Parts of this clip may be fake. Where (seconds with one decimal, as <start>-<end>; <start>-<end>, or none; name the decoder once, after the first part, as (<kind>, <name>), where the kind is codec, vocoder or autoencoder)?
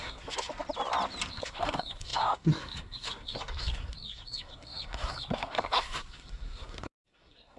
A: 0.0-0.5 (codec, SNAC); 1.3-7.6